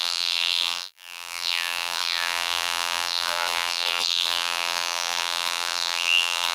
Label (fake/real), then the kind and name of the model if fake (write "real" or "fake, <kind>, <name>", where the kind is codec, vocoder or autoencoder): fake, vocoder, BigVGAN v2